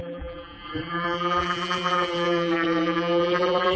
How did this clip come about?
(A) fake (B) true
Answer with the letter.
A